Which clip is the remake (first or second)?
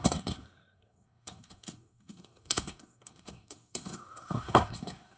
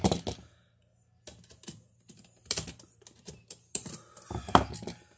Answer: first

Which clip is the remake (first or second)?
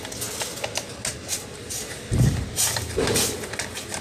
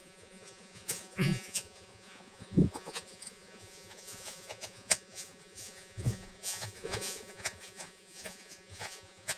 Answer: second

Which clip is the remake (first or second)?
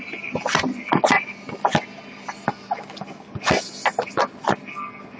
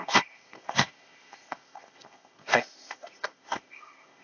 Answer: second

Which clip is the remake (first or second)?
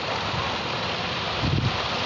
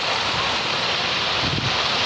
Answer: second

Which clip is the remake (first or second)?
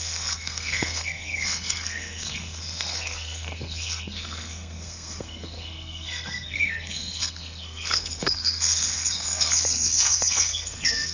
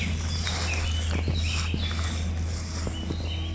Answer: first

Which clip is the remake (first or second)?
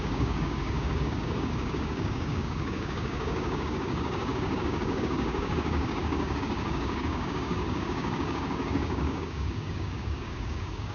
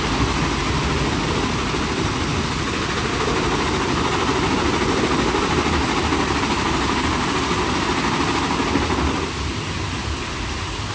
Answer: first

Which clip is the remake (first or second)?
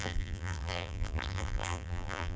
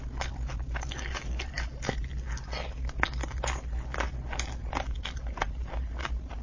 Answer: first